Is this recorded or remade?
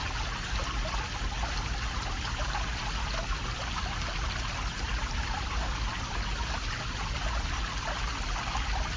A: recorded